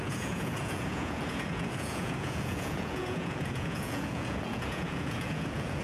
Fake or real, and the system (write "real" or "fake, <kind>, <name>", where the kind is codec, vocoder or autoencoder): fake, vocoder, Vocos